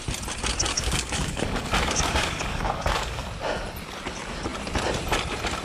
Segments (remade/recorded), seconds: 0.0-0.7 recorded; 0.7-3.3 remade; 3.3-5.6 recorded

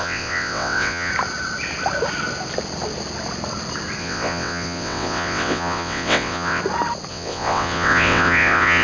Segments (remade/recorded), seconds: 0.0-1.1 remade; 1.1-4.0 recorded; 4.0-6.6 remade; 6.6-7.1 recorded; 7.1-8.8 remade

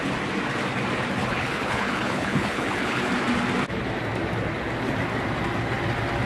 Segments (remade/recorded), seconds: 0.0-1.2 recorded; 1.2-3.1 remade; 3.1-6.3 recorded

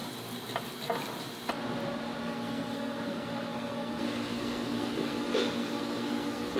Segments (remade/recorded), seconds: 0.0-2.2 recorded; 2.2-6.6 remade

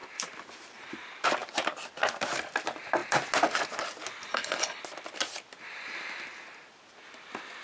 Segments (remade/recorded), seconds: 0.0-4.3 recorded; 4.3-4.8 remade; 4.8-7.6 recorded